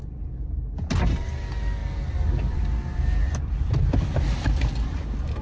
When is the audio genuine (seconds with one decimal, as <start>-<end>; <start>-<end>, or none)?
0.0-1.8; 5.0-5.4